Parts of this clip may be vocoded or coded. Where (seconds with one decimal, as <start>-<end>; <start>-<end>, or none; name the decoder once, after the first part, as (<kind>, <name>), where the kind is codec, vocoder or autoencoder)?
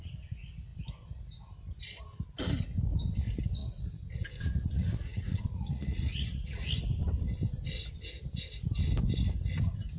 3.6-6.7 (vocoder, Vocos)